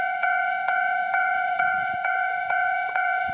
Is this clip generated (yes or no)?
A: yes